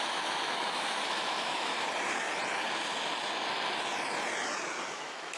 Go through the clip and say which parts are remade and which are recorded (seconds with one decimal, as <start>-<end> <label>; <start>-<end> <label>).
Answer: 0.0-1.7 remade; 1.7-4.9 recorded; 4.9-5.4 remade

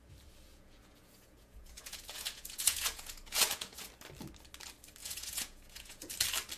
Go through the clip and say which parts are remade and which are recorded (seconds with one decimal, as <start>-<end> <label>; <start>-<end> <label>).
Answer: 0.0-0.5 recorded; 0.5-3.9 remade; 3.9-5.0 recorded; 5.0-6.1 remade; 6.1-6.6 recorded

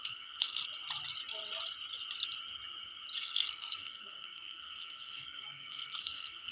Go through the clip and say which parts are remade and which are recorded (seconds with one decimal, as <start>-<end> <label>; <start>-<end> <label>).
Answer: 0.0-0.6 remade; 0.6-3.2 recorded; 3.2-6.5 remade

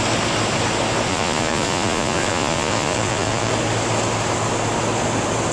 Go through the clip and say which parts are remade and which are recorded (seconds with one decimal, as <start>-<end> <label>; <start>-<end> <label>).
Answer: 0.0-1.1 recorded; 1.1-3.5 remade; 3.5-5.5 recorded

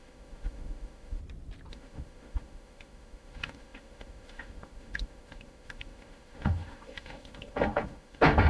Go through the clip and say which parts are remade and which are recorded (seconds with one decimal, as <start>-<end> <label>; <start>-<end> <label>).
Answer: 0.0-1.2 remade; 1.2-1.7 recorded; 1.7-8.5 remade

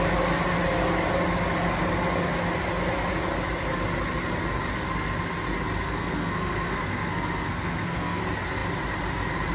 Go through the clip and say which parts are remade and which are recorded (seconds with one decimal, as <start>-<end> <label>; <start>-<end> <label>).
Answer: 0.0-5.8 recorded; 5.8-8.2 remade; 8.2-9.5 recorded